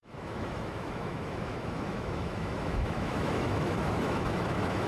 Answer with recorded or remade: remade